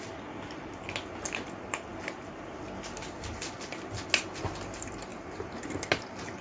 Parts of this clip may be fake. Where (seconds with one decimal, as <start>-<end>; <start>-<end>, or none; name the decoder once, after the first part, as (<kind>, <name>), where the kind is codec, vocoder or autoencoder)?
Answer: 5.1-5.6 (vocoder, BigVGAN v2)